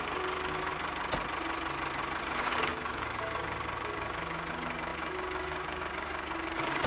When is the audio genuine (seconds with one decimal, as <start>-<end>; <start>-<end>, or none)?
0.7-2.2